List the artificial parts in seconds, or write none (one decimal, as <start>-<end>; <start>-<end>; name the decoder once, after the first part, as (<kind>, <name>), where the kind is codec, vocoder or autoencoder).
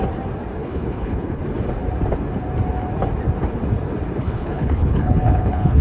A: 0.6-1.4 (codec, HILCodec); 4.2-5.8